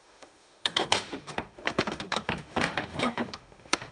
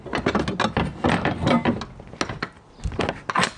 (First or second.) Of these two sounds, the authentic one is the second